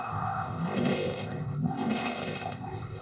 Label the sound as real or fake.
fake